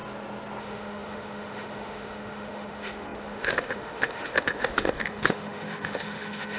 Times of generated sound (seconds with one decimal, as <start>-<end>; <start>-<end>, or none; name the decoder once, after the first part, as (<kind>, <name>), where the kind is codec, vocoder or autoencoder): 0.6-6.6 (autoencoder, DAC-VAE)